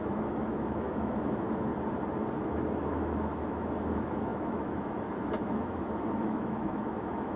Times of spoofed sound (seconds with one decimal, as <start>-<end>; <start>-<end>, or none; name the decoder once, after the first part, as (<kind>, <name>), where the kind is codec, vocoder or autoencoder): 0.0-1.7 (autoencoder, DAC-VAE); 2.4-7.4